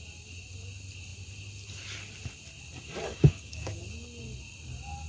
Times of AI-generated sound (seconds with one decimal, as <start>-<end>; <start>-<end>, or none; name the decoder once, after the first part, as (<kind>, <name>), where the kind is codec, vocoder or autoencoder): 3.1-3.8 (codec, DAC)